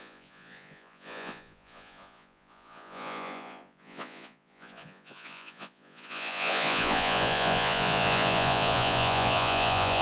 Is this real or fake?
fake